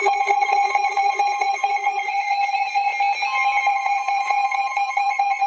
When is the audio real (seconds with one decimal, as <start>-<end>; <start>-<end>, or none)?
2.9-3.7